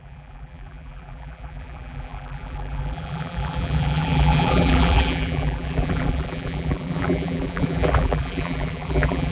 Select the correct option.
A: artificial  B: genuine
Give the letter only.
A